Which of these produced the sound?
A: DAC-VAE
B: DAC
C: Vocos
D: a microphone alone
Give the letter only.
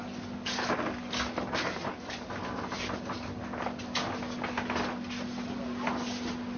D